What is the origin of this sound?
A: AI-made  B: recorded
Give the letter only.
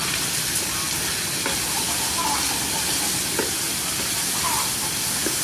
B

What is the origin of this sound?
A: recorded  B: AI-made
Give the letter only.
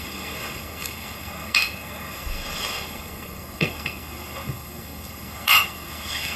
B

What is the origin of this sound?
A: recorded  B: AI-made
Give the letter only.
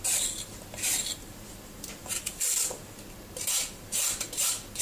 A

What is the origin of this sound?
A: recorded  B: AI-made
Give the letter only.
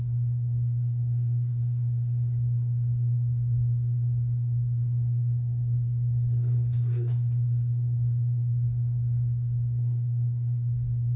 B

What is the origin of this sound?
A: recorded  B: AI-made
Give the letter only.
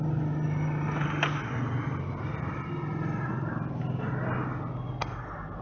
A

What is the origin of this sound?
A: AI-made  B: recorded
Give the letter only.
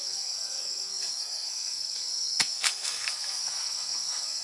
A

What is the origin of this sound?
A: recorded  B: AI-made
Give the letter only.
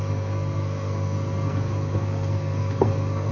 B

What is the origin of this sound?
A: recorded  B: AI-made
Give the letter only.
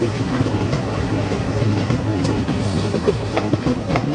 B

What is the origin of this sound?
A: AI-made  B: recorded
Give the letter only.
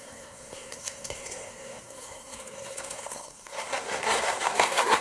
A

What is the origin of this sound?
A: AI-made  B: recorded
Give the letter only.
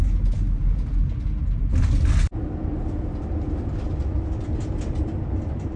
B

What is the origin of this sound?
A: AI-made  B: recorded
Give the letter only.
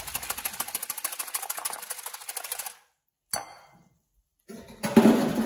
B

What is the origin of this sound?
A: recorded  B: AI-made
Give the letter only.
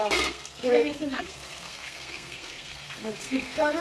B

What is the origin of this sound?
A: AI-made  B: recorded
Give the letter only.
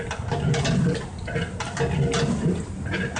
B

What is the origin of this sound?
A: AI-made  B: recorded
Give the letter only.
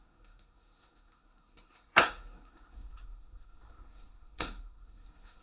A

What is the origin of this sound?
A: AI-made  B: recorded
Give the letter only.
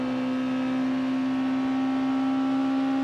B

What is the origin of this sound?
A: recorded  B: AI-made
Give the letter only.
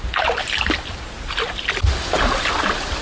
A